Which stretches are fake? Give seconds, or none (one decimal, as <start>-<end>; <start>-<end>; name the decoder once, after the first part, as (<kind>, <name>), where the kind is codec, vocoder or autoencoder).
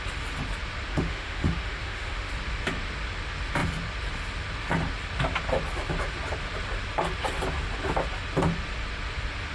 0.9-2.3 (autoencoder, DAC-VAE)